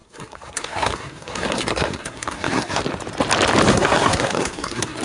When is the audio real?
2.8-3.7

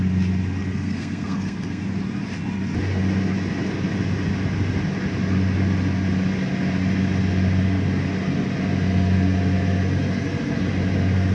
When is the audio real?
0.0-0.7; 1.8-11.3

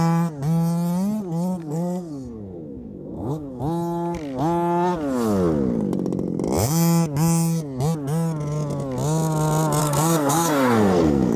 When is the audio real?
0.0-1.6; 3.6-9.8

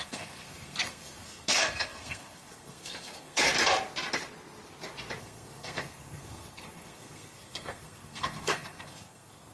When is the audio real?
3.5-5.2

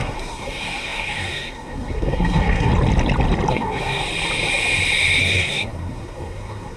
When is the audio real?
2.7-3.5; 4.0-5.2

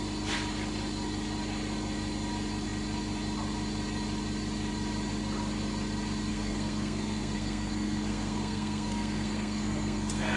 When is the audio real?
0.0-6.3

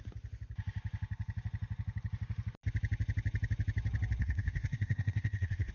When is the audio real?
0.0-4.2

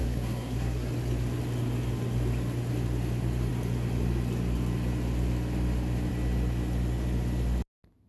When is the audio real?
0.9-8.1